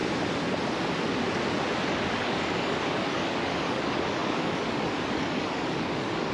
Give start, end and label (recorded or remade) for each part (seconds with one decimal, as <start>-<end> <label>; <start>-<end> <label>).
0.0-1.9 recorded; 1.9-6.3 remade